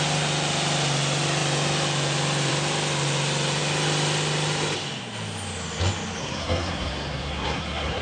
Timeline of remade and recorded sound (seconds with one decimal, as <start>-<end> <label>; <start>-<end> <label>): 0.0-6.2 recorded; 6.2-8.0 remade